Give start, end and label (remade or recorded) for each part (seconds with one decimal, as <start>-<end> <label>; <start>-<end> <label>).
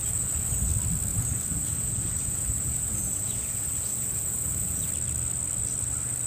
0.0-0.7 remade; 0.7-1.1 recorded; 1.1-4.9 remade; 4.9-6.3 recorded